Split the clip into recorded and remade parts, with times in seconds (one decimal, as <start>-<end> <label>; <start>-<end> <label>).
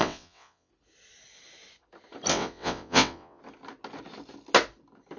0.0-0.7 remade; 0.7-2.3 recorded; 2.3-3.4 remade; 3.4-5.2 recorded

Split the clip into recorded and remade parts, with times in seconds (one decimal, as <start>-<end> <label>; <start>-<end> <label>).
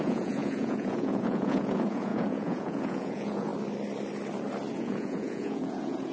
0.0-3.5 remade; 3.5-4.7 recorded; 4.7-6.1 remade